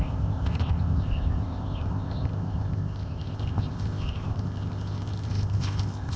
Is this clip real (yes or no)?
no